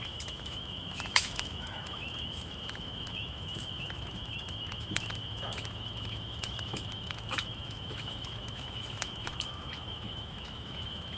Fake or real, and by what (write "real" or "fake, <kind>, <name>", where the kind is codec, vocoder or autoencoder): fake, autoencoder, DAC-VAE